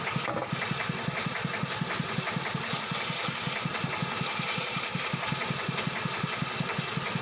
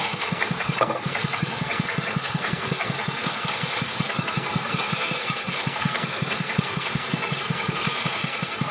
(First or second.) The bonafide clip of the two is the first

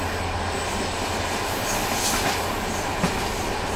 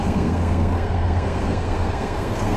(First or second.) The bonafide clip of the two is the first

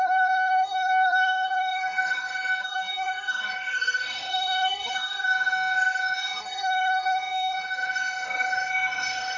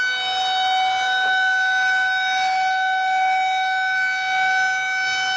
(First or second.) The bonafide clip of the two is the second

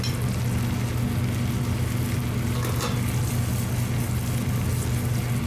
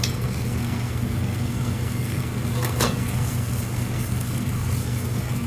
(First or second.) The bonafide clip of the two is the first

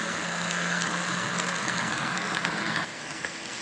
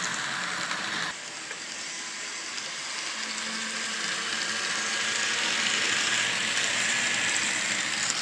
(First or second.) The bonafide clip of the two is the second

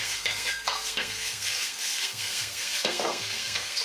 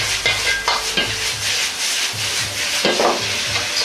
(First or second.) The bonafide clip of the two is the second